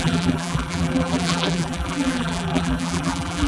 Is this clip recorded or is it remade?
remade